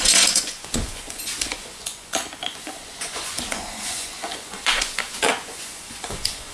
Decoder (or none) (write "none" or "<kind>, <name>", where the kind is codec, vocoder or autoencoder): vocoder, Vocos